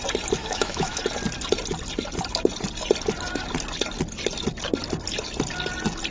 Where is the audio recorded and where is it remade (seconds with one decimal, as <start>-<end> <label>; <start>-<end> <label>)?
0.0-0.4 recorded; 0.4-1.0 remade; 1.0-6.1 recorded